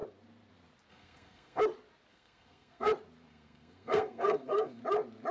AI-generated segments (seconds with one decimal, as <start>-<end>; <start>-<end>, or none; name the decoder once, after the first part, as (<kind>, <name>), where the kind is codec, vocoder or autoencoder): 0.9-1.6 (codec, SNAC); 2.1-2.9; 3.3-4.8